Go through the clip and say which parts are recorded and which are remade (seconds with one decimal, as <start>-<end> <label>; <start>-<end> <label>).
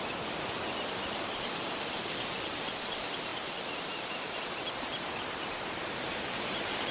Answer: 0.0-6.9 remade